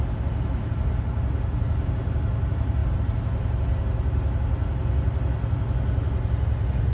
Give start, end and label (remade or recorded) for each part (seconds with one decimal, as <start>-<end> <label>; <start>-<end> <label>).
0.0-6.9 recorded